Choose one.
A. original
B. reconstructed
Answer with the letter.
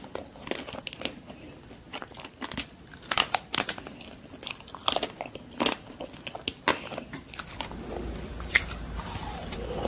A